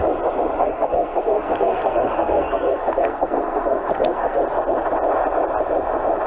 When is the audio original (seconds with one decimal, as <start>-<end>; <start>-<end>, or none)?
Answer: 0.0-0.6; 4.4-6.3